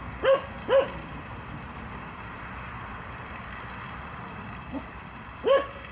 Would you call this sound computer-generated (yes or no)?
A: yes